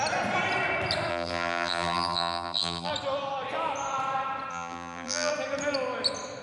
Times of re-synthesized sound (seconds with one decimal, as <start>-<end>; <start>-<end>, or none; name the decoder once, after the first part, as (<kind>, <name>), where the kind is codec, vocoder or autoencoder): 1.1-2.9 (vocoder, BigVGAN v2); 4.5-5.3

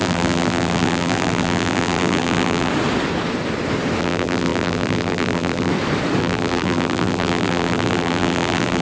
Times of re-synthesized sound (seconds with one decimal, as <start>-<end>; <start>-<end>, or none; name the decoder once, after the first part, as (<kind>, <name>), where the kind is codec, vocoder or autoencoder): 0.0-2.7 (vocoder, BigVGAN v2); 4.0-5.7; 6.2-8.8

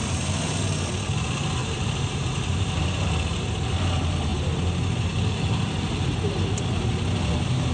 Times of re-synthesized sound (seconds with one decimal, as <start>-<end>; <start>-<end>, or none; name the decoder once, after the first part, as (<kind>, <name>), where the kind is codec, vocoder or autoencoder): 1.6-2.8 (vocoder, BigVGAN v2)

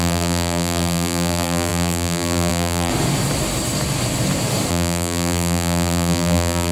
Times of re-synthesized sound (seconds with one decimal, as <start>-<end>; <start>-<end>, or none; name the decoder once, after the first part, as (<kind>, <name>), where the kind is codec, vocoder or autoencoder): 0.0-2.9 (vocoder, BigVGAN v2); 4.7-6.7